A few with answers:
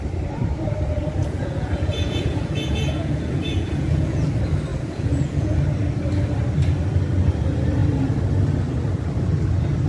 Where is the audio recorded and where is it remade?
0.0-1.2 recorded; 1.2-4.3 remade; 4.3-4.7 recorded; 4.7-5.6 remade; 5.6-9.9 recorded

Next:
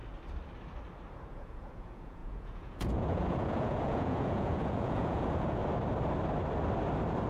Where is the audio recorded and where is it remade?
0.0-1.3 recorded; 1.3-5.6 remade; 5.6-7.3 recorded

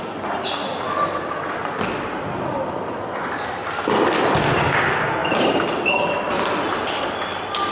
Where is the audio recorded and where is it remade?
0.0-7.7 recorded